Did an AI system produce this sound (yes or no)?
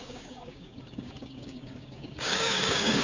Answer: yes